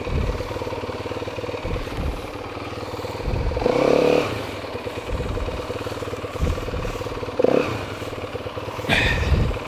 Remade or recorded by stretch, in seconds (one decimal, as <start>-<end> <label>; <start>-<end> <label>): 0.0-9.7 remade